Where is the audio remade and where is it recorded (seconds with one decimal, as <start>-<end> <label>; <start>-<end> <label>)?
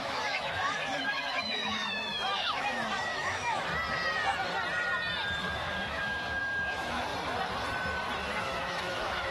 0.0-3.7 remade; 3.7-5.4 recorded; 5.4-7.1 remade; 7.1-8.4 recorded; 8.4-9.3 remade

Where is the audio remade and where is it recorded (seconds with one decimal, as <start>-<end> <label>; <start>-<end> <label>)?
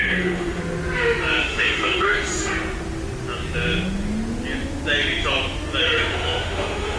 0.0-0.6 remade; 0.6-1.4 recorded; 1.4-2.3 remade; 2.3-6.1 recorded; 6.1-7.0 remade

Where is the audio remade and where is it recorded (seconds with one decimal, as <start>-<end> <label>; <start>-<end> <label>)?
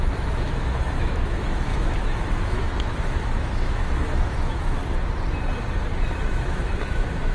0.0-4.8 remade; 4.8-6.5 recorded; 6.5-7.3 remade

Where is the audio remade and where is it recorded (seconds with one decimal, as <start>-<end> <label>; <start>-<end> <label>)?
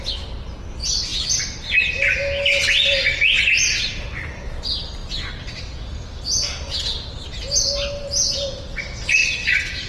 0.0-9.9 recorded